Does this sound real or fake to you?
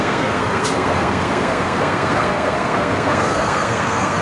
fake